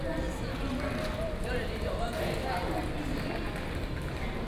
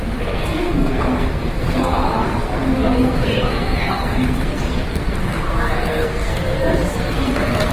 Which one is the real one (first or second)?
first